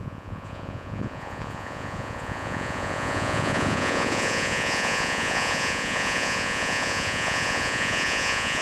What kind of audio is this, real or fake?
fake